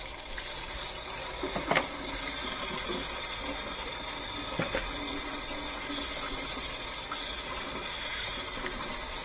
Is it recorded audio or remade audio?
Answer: recorded